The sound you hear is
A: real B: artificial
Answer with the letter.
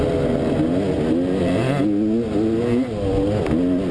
A